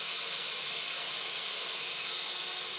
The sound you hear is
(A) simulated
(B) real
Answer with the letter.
A